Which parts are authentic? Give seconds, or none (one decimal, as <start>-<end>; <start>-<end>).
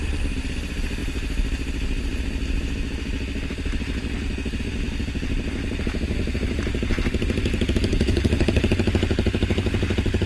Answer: 0.0-7.9; 8.6-10.3